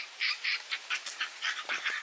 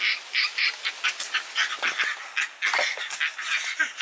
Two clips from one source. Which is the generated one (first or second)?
first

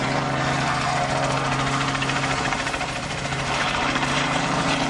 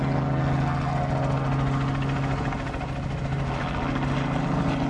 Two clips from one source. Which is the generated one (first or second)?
first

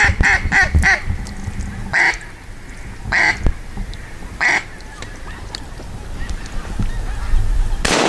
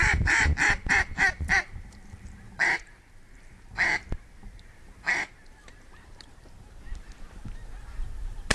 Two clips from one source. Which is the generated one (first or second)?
second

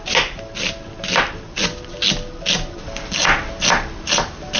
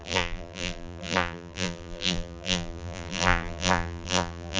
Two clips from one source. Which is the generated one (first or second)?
second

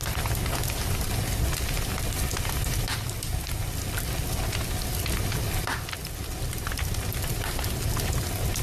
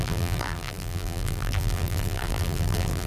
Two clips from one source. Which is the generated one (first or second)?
second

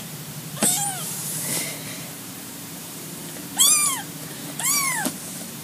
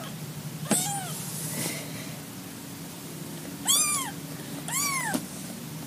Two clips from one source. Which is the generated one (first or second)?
first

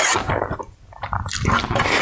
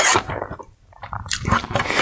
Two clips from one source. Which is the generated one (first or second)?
second